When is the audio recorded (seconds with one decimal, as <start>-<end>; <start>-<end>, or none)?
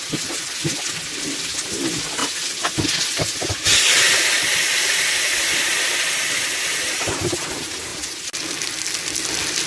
0.0-9.7